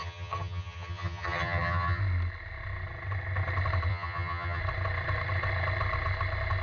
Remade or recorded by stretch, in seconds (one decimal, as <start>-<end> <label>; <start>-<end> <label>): 0.0-2.0 remade; 2.0-3.9 recorded; 3.9-4.6 remade; 4.6-6.6 recorded